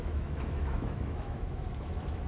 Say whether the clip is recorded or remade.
remade